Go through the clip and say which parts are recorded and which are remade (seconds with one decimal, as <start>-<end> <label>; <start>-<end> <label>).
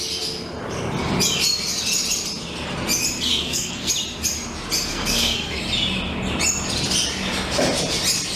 0.0-3.3 recorded; 3.3-3.9 remade; 3.9-4.9 recorded; 4.9-5.6 remade; 5.6-8.4 recorded